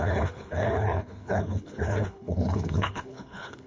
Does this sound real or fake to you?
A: fake